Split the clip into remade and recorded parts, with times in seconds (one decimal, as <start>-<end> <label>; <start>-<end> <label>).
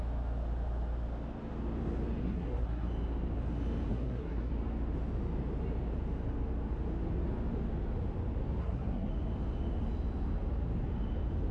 0.0-2.2 recorded; 2.2-2.9 remade; 2.9-3.9 recorded; 3.9-4.5 remade; 4.5-8.6 recorded; 8.6-9.1 remade; 9.1-11.5 recorded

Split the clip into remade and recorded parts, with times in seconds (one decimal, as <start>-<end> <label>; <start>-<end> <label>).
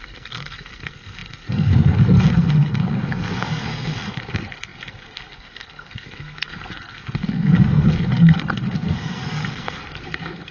0.0-10.5 remade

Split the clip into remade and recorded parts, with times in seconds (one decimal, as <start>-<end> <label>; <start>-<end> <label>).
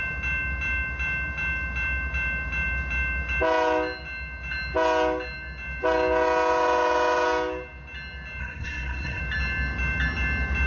0.0-8.4 recorded; 8.4-9.2 remade; 9.2-10.7 recorded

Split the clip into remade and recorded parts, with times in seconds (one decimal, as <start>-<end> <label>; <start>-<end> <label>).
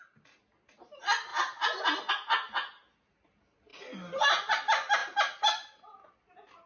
0.0-6.7 recorded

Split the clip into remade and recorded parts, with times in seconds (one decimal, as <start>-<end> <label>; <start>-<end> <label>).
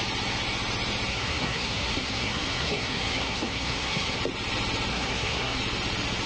0.0-1.1 recorded; 1.1-4.2 remade; 4.2-4.9 recorded; 4.9-5.6 remade; 5.6-6.3 recorded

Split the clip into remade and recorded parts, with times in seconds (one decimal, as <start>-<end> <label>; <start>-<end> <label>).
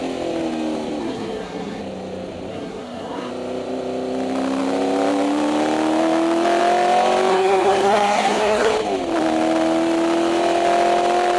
0.0-1.0 recorded; 1.0-1.8 remade; 1.8-2.5 recorded; 2.5-3.3 remade; 3.3-7.3 recorded; 7.3-8.7 remade; 8.7-11.4 recorded